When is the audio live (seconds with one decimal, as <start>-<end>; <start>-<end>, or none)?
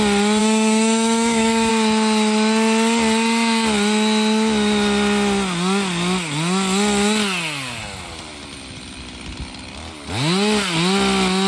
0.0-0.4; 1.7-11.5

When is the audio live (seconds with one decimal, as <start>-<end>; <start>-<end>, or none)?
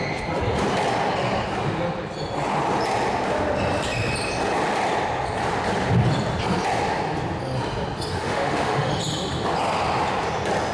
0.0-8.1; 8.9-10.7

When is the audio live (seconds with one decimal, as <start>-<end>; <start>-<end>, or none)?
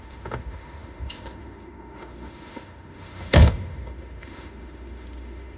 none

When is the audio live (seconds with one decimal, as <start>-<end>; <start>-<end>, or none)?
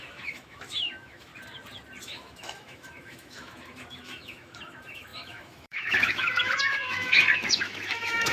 1.3-2.0